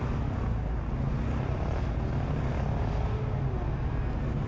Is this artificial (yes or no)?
no